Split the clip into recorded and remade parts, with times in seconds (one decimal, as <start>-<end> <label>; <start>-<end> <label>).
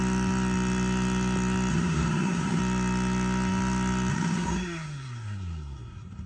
0.0-1.7 recorded; 1.7-2.6 remade; 2.6-4.1 recorded; 4.1-6.3 remade